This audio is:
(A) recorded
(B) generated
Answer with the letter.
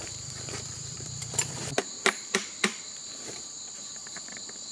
B